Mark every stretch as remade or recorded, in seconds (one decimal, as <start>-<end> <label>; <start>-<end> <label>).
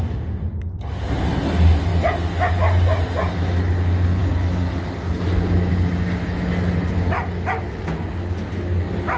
0.0-9.2 recorded